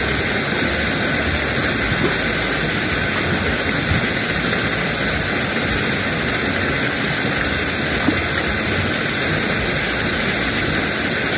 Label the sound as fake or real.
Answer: real